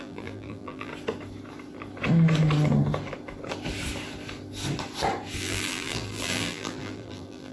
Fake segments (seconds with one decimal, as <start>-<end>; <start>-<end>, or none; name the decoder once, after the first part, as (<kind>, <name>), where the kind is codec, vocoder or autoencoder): 0.0-0.9 (vocoder, BigVGAN v2); 5.4-7.5